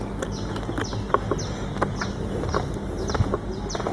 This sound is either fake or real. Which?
real